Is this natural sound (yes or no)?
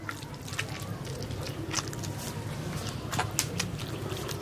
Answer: yes